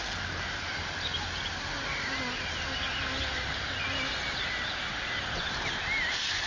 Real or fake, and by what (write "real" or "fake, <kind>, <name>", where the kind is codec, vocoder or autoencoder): real